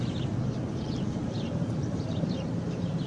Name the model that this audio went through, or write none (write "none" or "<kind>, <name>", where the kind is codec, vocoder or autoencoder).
vocoder, BigVGAN v2